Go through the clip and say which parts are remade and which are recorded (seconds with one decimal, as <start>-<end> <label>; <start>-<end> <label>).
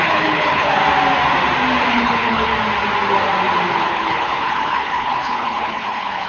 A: 0.0-0.8 remade; 0.8-1.9 recorded; 1.9-2.5 remade; 2.5-3.7 recorded; 3.7-6.3 remade